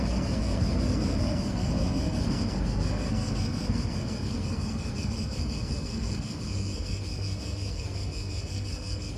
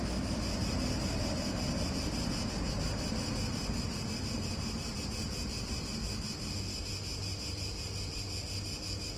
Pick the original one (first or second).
second